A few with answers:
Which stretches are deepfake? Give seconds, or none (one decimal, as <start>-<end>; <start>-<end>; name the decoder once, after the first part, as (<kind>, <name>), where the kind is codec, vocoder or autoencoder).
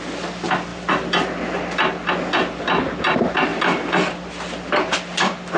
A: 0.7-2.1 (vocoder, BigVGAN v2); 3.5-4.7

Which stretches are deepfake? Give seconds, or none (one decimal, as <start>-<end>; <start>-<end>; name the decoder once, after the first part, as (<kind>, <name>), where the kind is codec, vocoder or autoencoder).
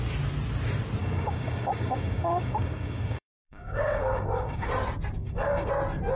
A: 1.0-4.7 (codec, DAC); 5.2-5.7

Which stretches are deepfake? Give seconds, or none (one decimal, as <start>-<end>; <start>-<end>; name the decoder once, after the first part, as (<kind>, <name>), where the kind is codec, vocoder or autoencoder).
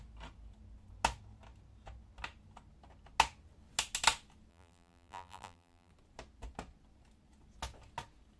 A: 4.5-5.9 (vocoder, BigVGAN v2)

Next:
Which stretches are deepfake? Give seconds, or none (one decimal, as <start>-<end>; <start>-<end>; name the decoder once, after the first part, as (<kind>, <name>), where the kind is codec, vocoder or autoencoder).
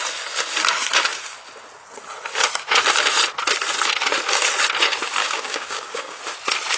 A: 5.2-6.2 (codec, DAC)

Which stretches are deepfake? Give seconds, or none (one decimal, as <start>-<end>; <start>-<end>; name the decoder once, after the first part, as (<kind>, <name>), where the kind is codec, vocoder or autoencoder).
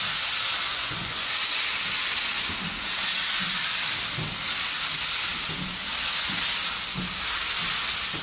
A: 0.7-1.6 (vocoder, Vocos)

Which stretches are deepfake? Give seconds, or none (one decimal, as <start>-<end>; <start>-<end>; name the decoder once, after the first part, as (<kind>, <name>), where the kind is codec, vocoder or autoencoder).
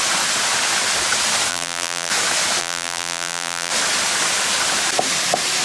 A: 1.5-2.1 (vocoder, BigVGAN v2); 2.6-3.7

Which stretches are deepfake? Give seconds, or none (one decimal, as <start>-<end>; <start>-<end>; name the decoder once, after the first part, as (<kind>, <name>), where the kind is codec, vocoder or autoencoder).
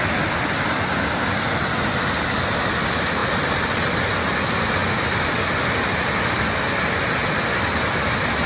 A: none